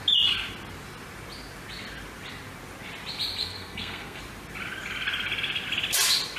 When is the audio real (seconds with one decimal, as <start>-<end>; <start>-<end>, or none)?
0.0-3.4; 4.2-6.4